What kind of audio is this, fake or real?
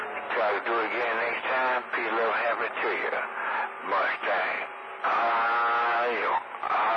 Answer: real